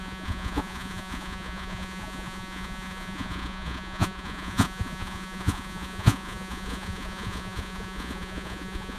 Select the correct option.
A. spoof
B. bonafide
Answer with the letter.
A